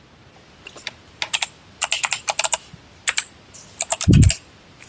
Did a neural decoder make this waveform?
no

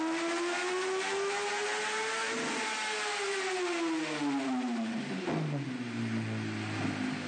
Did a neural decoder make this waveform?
no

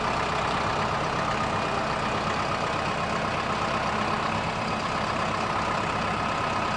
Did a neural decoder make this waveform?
no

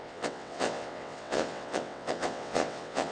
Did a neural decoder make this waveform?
yes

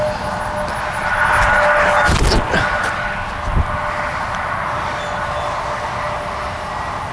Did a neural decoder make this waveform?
no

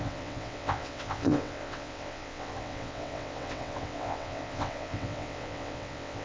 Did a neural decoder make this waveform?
yes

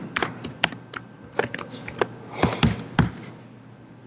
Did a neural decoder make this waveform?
no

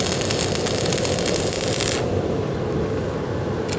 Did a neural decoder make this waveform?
no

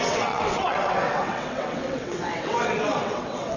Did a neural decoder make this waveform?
yes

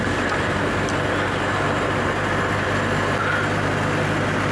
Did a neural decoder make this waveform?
no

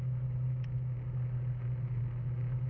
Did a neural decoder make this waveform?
no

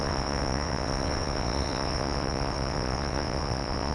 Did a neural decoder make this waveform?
yes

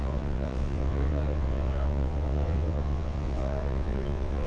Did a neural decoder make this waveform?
yes